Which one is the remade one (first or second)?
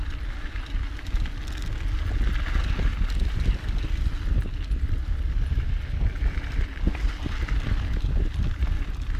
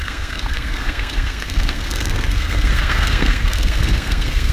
second